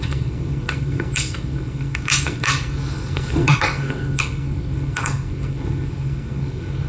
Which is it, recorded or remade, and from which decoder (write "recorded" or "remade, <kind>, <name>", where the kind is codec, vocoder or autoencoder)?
remade, codec, SNAC